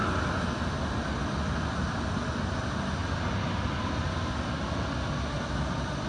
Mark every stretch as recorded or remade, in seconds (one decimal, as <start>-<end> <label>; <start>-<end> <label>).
0.0-6.1 recorded